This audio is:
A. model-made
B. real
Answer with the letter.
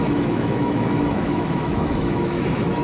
A